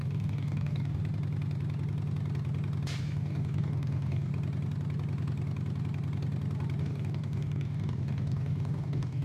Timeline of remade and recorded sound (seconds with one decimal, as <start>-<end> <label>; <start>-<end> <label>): 0.0-1.0 remade; 1.0-3.0 recorded; 3.0-4.3 remade; 4.3-6.8 recorded; 6.8-9.2 remade